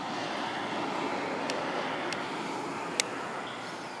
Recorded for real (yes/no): yes